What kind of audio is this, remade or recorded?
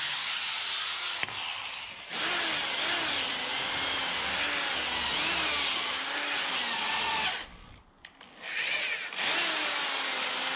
recorded